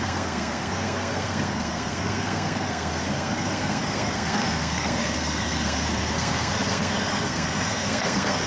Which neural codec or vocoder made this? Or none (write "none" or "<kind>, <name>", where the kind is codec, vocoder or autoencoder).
codec, SNAC